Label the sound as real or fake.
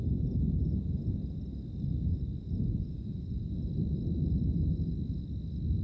real